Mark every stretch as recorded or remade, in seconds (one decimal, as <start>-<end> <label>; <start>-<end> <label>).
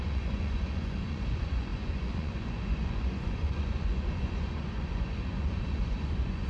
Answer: 0.0-6.5 remade